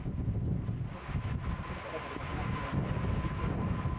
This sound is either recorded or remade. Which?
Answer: recorded